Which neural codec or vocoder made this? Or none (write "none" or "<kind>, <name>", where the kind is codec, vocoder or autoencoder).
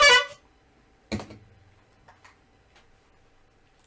none